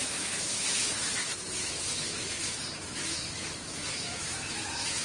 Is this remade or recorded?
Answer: remade